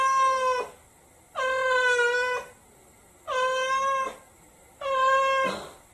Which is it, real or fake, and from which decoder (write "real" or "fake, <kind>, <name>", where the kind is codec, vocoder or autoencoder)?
real